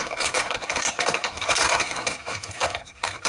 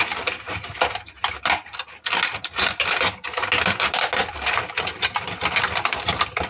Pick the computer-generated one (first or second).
first